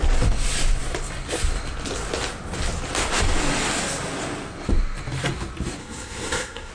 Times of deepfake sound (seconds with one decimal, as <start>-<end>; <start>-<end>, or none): 5.8-6.7